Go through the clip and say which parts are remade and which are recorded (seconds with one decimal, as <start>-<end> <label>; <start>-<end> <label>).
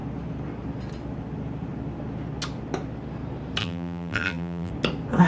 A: 0.0-3.6 recorded; 3.6-4.7 remade; 4.7-5.3 recorded